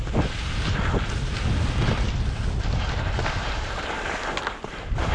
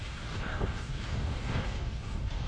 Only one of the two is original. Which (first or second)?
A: first